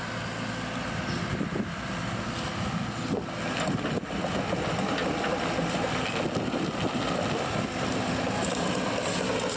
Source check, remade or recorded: recorded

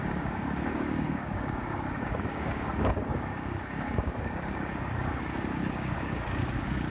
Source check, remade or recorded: remade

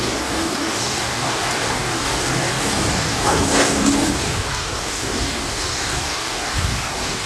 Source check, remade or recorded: remade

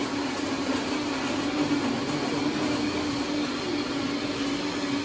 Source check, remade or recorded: recorded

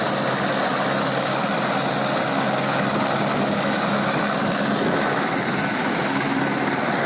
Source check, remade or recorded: recorded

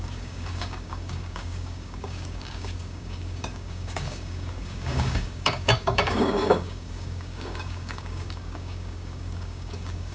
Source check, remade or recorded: remade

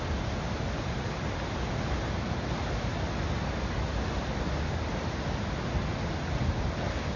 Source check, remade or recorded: recorded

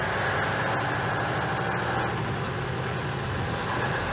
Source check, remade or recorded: recorded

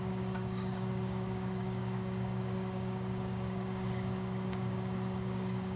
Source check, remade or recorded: remade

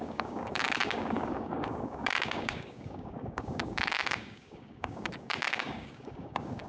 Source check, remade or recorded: remade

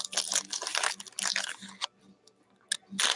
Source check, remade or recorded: recorded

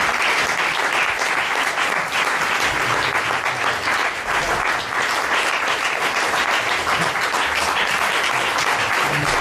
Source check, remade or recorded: recorded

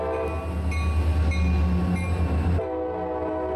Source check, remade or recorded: recorded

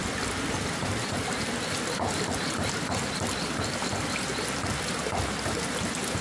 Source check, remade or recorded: recorded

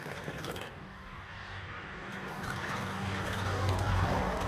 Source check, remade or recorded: remade